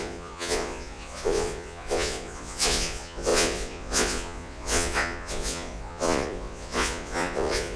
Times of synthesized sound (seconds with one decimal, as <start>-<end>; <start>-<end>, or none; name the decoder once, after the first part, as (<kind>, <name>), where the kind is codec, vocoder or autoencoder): 0.0-7.8 (vocoder, Vocos)